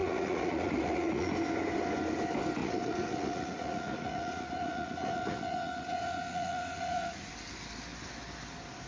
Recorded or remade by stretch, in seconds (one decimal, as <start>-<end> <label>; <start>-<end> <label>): 0.0-1.3 remade; 1.3-2.6 recorded; 2.6-7.3 remade; 7.3-8.9 recorded